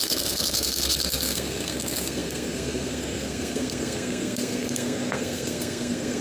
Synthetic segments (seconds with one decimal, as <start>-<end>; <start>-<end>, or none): 0.0-6.2